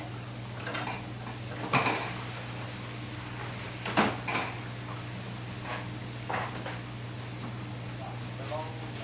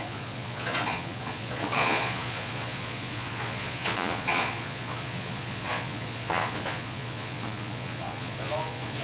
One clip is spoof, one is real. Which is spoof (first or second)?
second